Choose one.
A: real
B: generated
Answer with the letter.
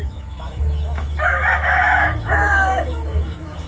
B